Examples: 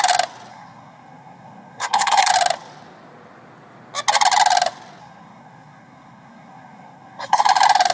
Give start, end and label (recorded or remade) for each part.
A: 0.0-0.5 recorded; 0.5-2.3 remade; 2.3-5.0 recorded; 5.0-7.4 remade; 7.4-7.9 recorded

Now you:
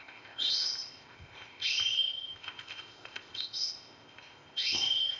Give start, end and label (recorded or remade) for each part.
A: 0.0-5.2 remade

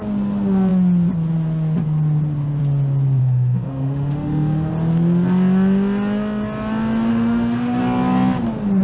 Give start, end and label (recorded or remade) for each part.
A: 0.0-3.2 recorded; 3.2-4.7 remade; 4.7-7.1 recorded; 7.1-7.8 remade; 7.8-8.8 recorded

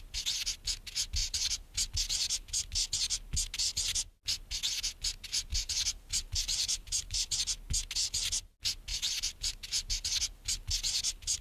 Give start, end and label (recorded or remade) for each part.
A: 0.0-1.2 recorded; 1.2-1.9 remade; 1.9-5.5 recorded; 5.5-7.4 remade; 7.4-8.9 recorded; 8.9-9.9 remade; 9.9-11.4 recorded

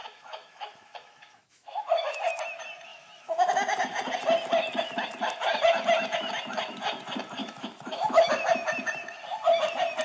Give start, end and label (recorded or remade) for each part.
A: 0.0-2.3 remade; 2.3-2.9 recorded; 2.9-3.5 remade; 3.5-7.4 recorded; 7.4-8.3 remade; 8.3-10.0 recorded

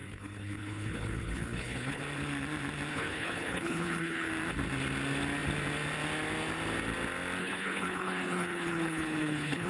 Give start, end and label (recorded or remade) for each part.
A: 0.0-2.0 remade; 2.0-2.9 recorded; 2.9-4.3 remade; 4.3-7.4 recorded; 7.4-9.7 remade